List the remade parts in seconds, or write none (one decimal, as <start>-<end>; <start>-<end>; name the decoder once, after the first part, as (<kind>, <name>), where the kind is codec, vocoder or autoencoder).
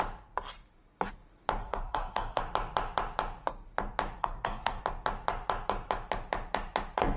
1.6-2.4 (codec, SNAC); 4.2-4.8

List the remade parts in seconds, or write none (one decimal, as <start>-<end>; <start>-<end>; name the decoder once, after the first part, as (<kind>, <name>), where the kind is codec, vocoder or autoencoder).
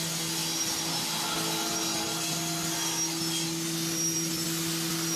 none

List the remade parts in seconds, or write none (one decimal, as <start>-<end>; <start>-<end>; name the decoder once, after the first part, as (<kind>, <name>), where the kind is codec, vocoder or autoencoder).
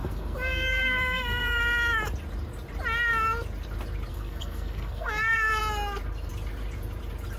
0.0-1.6 (codec, SNAC); 4.1-5.6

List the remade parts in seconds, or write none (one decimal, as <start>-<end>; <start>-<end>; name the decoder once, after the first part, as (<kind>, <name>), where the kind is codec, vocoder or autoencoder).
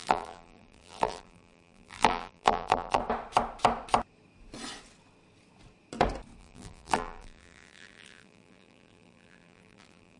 0.0-3.0 (vocoder, BigVGAN v2); 6.4-10.2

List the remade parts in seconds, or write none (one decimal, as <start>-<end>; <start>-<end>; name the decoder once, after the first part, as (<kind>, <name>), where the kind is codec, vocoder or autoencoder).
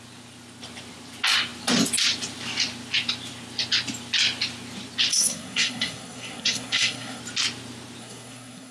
5.1-7.2 (codec, SNAC); 8.0-8.7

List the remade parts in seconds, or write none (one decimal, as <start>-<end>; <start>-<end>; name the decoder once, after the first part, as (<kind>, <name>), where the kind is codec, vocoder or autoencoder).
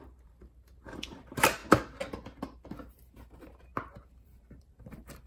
0.0-1.6 (vocoder, BigVGAN v2); 2.9-5.3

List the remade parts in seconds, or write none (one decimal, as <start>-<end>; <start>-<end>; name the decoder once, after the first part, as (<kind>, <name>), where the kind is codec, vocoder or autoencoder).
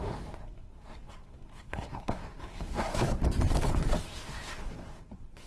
0.0-3.2 (codec, SNAC); 4.0-5.5